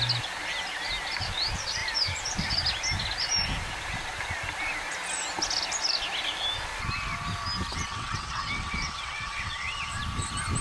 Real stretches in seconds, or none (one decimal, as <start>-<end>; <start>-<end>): 0.0-7.7; 10.0-10.6